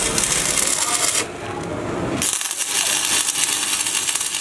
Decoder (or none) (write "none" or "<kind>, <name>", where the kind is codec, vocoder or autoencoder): none